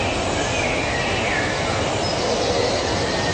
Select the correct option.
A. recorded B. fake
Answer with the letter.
A